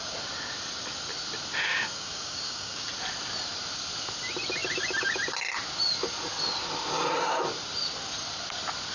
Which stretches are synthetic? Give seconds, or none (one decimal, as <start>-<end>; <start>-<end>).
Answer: 1.7-2.9